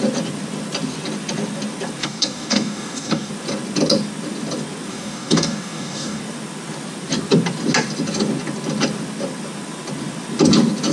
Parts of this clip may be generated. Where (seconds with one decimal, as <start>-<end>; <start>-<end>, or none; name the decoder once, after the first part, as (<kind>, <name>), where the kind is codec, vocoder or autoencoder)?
2.0-3.3 (codec, DAC); 4.9-6.2